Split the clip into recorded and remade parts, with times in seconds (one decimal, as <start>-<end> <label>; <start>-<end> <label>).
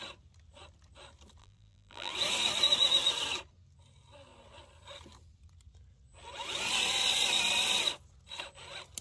0.0-1.4 recorded; 1.4-2.1 remade; 2.1-9.0 recorded